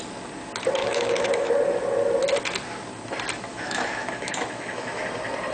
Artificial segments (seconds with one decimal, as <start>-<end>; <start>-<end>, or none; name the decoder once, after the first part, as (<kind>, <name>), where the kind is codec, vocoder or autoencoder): 0.8-1.5 (autoencoder, DAC-VAE); 3.5-5.0

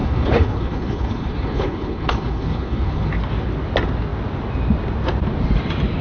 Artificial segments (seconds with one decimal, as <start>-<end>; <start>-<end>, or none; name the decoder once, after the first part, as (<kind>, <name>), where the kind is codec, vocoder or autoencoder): 0.0-3.1 (codec, HILCodec)

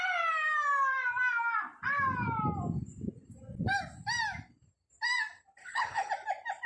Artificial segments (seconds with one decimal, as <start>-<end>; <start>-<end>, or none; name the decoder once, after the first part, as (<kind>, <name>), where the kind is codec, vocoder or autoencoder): 5.6-6.1 (codec, HILCodec)

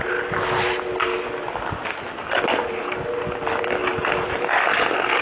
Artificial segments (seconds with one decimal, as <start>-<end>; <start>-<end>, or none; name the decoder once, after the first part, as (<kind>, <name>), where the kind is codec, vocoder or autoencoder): 1.1-1.6 (vocoder, BigVGAN v2)

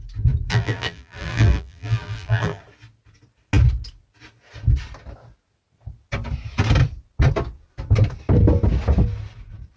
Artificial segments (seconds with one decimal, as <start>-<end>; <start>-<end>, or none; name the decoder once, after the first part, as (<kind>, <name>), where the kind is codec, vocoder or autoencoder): 0.5-2.6 (vocoder, BigVGAN v2)

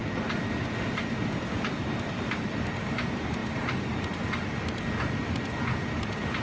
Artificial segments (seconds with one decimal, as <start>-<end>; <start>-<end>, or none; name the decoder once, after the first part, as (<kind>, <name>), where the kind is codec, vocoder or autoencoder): none

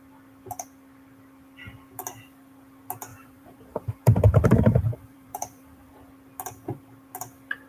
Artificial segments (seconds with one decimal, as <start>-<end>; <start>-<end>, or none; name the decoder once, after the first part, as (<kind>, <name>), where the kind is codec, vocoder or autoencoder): 3.1-5.9 (vocoder, BigVGAN v2)